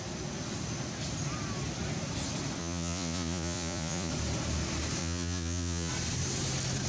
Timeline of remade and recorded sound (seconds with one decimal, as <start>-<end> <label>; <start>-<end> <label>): 0.0-2.6 recorded; 2.6-4.1 remade; 4.1-5.0 recorded; 5.0-5.9 remade; 5.9-6.9 recorded